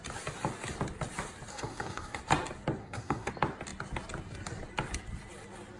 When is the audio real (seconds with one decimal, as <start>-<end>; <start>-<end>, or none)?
0.0-1.5; 2.2-2.8; 3.3-5.8